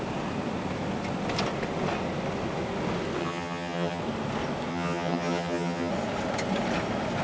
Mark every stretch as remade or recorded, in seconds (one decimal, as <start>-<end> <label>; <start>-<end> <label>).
0.0-3.2 recorded; 3.2-4.0 remade; 4.0-4.7 recorded; 4.7-5.9 remade; 5.9-7.2 recorded